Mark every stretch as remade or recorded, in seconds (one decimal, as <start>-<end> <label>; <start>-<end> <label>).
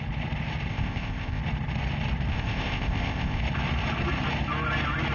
0.0-0.7 recorded; 0.7-1.4 remade; 1.4-2.3 recorded; 2.3-3.4 remade; 3.4-5.1 recorded